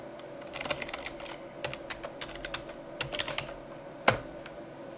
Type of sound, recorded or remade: recorded